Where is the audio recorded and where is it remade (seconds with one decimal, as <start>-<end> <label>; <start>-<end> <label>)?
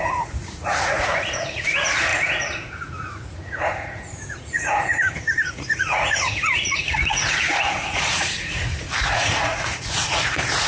0.0-10.7 remade